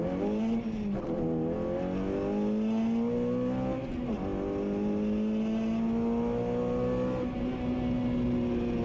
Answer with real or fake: real